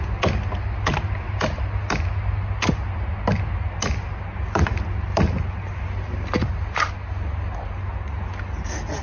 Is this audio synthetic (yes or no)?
no